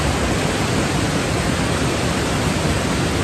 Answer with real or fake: real